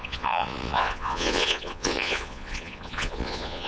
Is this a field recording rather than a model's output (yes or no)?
no